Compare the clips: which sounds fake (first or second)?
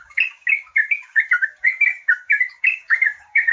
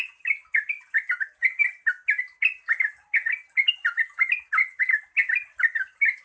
first